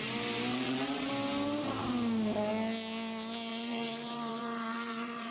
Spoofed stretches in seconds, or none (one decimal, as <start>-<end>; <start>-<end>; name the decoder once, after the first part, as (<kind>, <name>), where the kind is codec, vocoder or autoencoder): 0.5-1.1 (vocoder, WaveNeXt); 3.5-5.3